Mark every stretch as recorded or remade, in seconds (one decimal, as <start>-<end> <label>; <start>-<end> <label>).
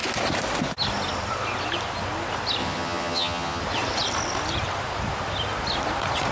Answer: 0.0-2.6 recorded; 2.6-3.6 remade; 3.6-6.3 recorded